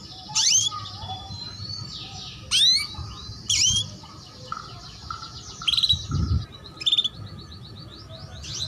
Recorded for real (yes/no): yes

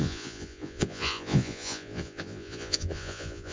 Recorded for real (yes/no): no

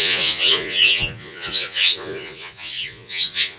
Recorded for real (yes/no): no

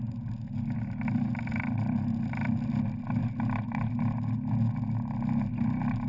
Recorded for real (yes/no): yes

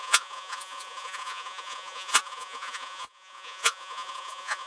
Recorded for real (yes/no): no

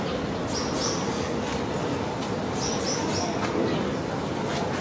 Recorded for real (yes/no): yes